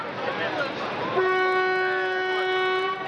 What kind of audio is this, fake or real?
real